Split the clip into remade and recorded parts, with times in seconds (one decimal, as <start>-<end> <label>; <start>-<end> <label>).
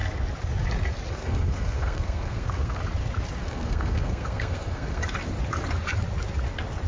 0.0-1.1 recorded; 1.1-2.8 remade; 2.8-3.4 recorded; 3.4-5.0 remade; 5.0-6.9 recorded